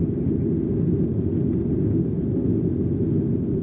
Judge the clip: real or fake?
real